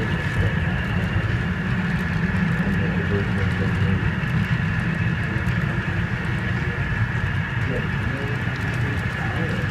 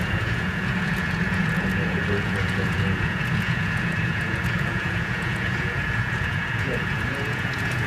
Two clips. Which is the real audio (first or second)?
first